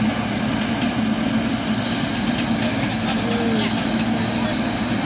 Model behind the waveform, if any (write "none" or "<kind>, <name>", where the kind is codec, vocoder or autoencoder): none